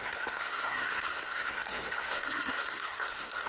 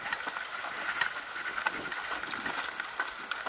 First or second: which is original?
second